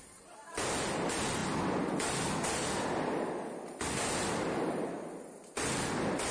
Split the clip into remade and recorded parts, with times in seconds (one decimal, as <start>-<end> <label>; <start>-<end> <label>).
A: 0.0-6.3 recorded